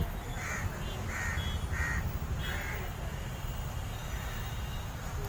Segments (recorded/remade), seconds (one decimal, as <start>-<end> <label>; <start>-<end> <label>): 0.0-5.3 recorded